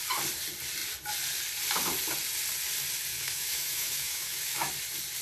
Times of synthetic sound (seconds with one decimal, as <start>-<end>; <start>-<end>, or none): 3.1-4.7